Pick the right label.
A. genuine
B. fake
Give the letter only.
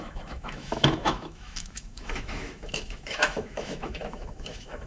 B